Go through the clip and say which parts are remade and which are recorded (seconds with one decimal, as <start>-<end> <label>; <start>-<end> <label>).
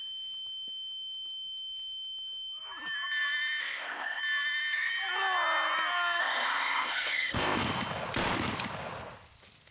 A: 0.0-3.6 recorded; 3.6-4.2 remade; 4.2-6.2 recorded; 6.2-7.6 remade; 7.6-9.7 recorded